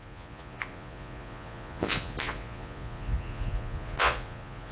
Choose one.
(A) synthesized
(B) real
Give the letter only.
A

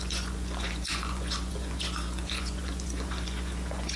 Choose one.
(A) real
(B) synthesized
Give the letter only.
B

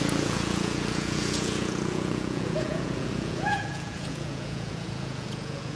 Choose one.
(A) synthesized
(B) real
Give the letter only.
A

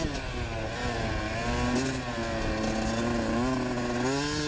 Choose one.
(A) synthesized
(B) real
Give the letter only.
B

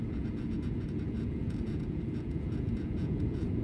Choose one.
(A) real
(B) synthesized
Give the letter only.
B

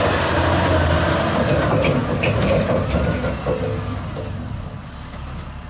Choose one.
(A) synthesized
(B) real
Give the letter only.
B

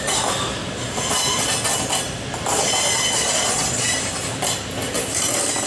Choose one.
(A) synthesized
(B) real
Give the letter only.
B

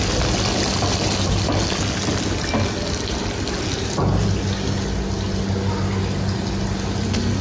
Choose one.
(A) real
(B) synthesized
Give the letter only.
A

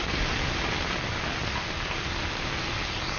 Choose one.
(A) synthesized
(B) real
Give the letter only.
B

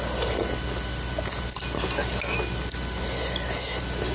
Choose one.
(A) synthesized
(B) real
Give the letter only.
B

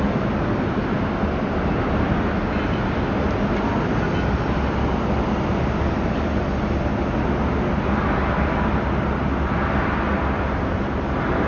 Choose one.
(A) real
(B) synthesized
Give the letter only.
A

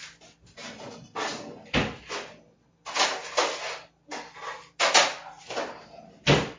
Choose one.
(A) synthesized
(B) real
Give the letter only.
B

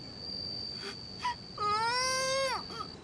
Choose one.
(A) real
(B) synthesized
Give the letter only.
A